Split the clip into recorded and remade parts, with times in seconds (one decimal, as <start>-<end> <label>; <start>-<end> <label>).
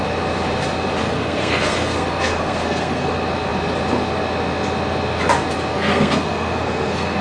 0.0-1.0 recorded; 1.0-3.1 remade; 3.1-5.7 recorded; 5.7-7.2 remade